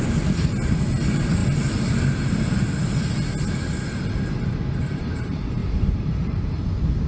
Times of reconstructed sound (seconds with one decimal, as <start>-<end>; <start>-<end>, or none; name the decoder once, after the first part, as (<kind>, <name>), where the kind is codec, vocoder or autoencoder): 0.0-1.4 (vocoder, BigVGAN v2); 5.1-7.1